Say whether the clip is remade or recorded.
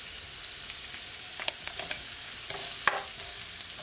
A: recorded